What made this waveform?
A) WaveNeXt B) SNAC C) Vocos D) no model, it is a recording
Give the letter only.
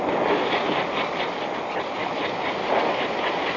D